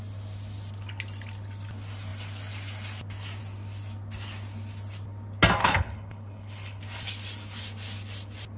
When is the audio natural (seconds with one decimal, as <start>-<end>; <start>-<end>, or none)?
0.0-5.6; 6.8-8.6